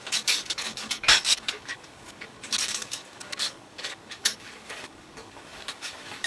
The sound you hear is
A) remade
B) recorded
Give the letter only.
A